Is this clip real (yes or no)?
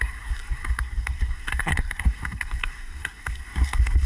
no